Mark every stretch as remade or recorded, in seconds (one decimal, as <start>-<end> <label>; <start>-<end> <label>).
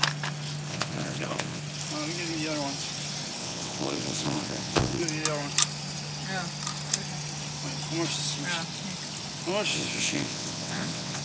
0.0-0.7 recorded; 0.7-1.6 remade; 1.6-3.4 recorded; 3.4-5.0 remade; 5.0-9.7 recorded; 9.7-11.2 remade